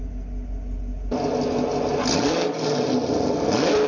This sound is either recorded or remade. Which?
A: recorded